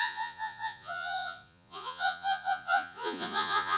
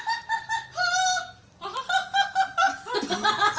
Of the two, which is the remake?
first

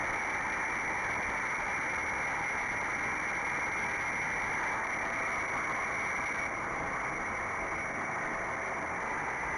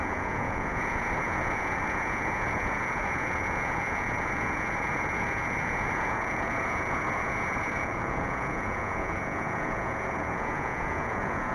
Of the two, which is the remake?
second